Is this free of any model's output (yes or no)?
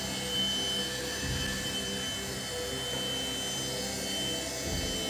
yes